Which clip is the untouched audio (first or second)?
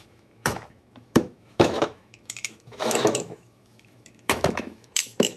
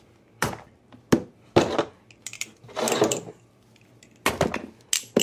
second